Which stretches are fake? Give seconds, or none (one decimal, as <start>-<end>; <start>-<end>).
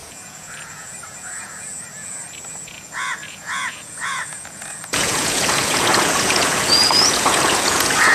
0.0-8.1